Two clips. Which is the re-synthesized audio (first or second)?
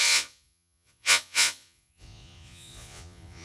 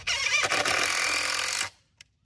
first